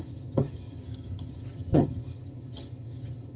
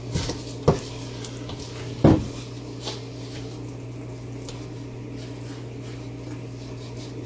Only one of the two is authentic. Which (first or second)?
second